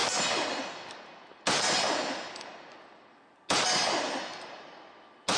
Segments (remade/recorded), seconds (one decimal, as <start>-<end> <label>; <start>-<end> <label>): 0.0-5.4 recorded